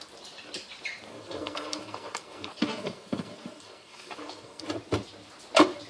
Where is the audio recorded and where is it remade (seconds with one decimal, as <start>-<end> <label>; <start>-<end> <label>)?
0.0-1.1 recorded; 1.1-4.6 remade; 4.6-5.9 recorded